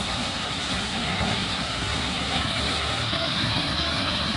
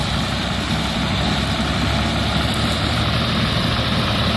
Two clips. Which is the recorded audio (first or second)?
second